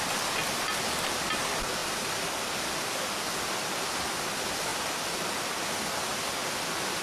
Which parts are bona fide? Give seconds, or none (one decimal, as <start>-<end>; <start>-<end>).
0.0-7.0